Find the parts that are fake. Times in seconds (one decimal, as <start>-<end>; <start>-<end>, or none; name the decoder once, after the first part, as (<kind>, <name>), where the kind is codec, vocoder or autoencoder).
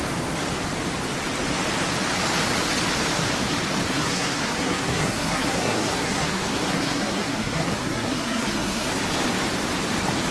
3.9-9.0 (codec, SNAC)